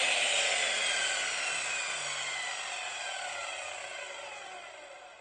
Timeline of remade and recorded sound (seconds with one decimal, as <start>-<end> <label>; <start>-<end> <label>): 0.0-5.2 recorded